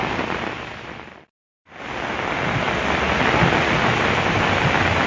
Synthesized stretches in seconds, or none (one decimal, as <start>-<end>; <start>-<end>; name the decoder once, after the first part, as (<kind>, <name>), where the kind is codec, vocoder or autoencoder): none